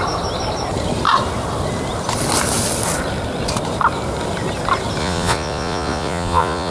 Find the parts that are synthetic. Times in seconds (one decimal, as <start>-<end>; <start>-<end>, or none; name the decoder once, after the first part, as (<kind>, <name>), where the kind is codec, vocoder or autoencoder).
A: 5.0-6.7 (vocoder, Vocos)